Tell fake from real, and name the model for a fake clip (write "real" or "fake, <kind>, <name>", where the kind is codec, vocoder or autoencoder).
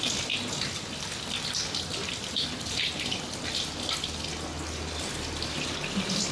real